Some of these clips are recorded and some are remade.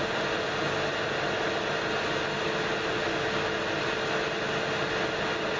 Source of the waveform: recorded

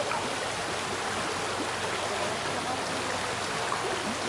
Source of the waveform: recorded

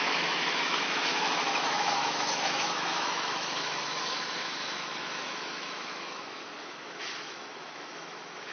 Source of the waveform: remade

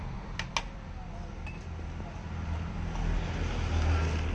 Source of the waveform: recorded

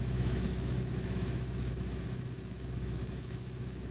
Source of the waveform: remade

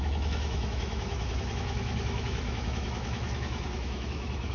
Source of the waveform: remade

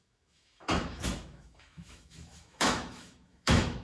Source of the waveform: remade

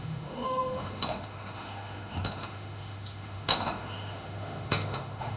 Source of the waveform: remade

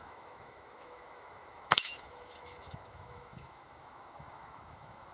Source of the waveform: remade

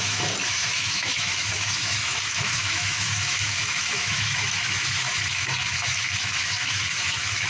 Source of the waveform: remade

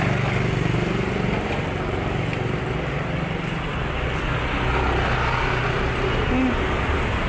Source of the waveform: recorded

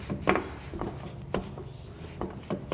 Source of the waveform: recorded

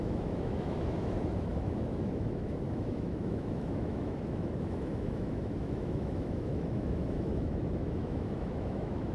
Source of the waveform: remade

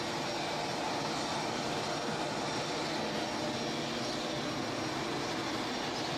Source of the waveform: recorded